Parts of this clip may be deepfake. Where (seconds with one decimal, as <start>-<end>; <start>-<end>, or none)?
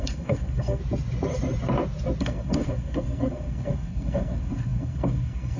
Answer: 0.0-0.8; 2.2-5.6